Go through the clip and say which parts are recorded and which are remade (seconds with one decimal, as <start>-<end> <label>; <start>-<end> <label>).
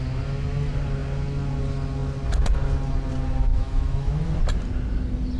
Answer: 0.0-3.5 recorded; 3.5-4.3 remade; 4.3-5.4 recorded